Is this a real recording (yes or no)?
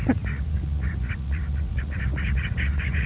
no